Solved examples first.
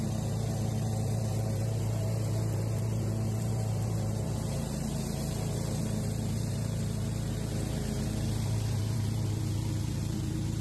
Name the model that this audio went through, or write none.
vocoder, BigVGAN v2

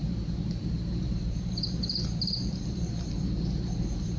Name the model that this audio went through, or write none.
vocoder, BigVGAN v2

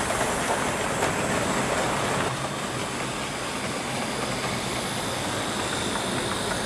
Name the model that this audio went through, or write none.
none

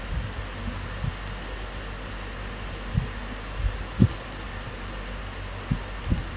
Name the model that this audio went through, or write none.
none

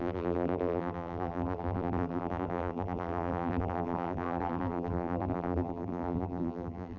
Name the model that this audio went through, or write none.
vocoder, BigVGAN v2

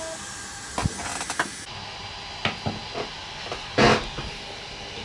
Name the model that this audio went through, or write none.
none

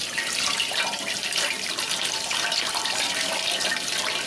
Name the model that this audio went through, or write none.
vocoder, BigVGAN v2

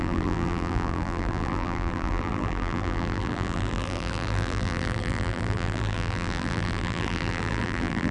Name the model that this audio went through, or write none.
vocoder, BigVGAN v2